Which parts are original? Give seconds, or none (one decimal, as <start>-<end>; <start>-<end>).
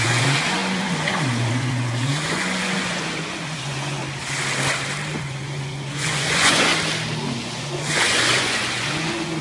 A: 4.0-5.2; 6.7-7.4